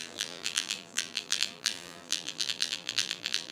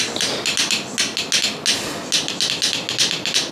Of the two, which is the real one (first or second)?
second